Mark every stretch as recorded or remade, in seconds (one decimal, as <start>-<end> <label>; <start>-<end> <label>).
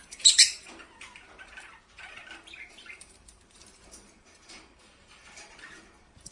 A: 0.0-6.3 remade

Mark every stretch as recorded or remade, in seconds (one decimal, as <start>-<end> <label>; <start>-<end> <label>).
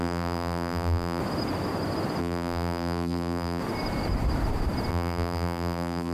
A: 0.0-1.2 remade; 1.2-2.2 recorded; 2.2-3.6 remade; 3.6-4.9 recorded; 4.9-6.1 remade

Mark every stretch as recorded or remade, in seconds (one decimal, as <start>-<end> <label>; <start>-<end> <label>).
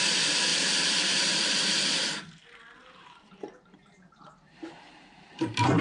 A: 0.0-0.5 recorded; 0.5-2.2 remade; 2.2-2.8 recorded; 2.8-5.8 remade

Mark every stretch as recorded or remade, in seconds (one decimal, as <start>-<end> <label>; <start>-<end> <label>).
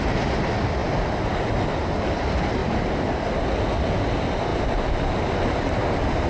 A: 0.0-6.3 recorded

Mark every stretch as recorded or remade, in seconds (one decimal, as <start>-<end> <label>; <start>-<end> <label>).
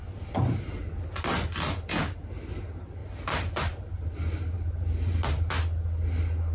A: 0.0-3.0 recorded; 3.0-5.5 remade; 5.5-6.5 recorded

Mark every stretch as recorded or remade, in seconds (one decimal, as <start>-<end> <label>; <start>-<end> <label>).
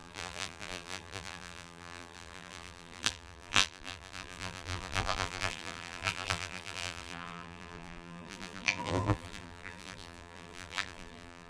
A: 0.0-11.5 remade